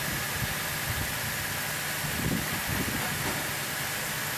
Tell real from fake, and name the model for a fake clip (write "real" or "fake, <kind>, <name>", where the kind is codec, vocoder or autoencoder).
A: real